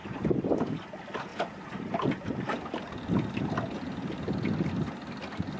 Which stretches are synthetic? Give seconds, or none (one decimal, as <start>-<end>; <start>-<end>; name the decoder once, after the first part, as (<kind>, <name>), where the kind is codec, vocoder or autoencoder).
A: 0.0-0.6 (vocoder, BigVGAN v2); 1.3-4.7